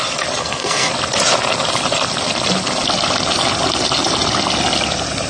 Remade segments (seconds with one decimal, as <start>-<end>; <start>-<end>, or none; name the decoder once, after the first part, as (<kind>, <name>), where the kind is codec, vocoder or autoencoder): 0.4-0.9 (codec, SNAC)